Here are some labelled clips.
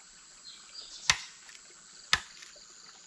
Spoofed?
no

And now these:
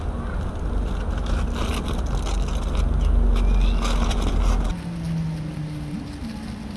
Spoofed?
no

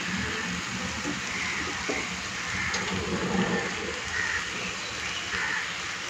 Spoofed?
no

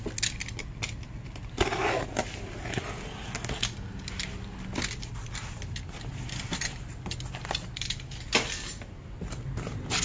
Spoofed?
no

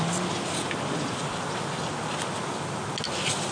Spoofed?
no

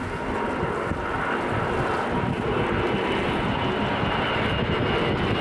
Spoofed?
no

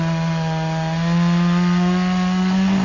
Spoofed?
no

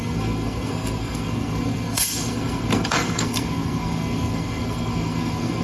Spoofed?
yes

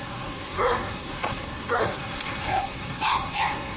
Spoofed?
yes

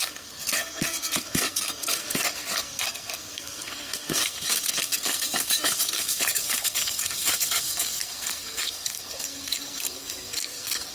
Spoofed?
yes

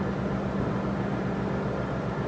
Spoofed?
no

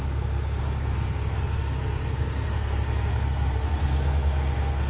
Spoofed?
yes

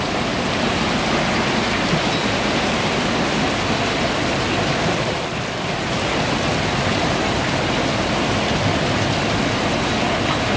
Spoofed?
no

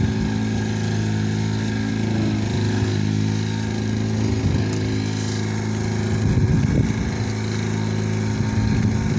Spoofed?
no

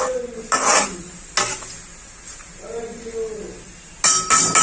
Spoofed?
no